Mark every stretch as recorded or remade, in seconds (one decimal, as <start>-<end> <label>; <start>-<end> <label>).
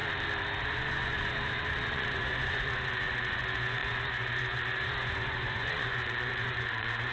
0.0-0.6 recorded; 0.6-7.1 remade